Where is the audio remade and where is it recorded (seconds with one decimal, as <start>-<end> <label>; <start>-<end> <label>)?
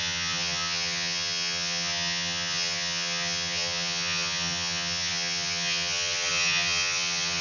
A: 0.0-7.4 remade